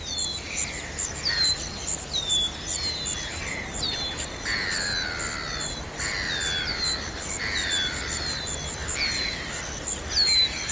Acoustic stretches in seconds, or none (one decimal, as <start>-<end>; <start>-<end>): 0.0-10.7